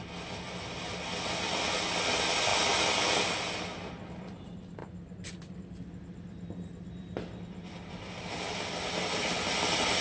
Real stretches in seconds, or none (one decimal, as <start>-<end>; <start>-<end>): 0.0-10.0